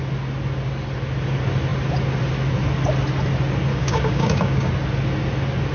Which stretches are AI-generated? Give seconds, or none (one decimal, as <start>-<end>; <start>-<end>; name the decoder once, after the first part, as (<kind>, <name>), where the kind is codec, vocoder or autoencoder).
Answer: 3.7-4.7 (codec, DAC)

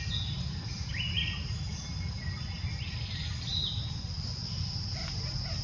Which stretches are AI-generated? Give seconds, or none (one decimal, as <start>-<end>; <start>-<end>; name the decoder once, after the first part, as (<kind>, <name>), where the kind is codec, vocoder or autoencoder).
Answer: none

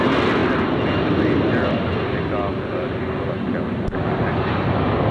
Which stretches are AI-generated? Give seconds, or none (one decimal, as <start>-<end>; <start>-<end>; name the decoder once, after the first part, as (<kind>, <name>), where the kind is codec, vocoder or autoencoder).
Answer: none

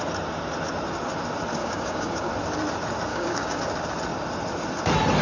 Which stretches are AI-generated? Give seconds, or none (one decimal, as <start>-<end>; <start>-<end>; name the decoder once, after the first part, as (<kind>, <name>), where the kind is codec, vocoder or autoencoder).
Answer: 1.6-2.3 (codec, DAC); 3.1-3.6

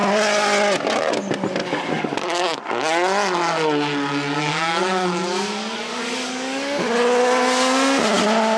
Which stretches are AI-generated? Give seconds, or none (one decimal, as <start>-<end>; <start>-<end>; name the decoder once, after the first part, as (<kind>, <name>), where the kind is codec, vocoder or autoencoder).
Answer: 1.6-2.6 (codec, DAC); 4.5-6.8